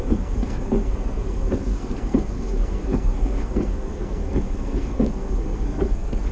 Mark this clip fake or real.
fake